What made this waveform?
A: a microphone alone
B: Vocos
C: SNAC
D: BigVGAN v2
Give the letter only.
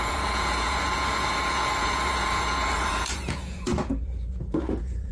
B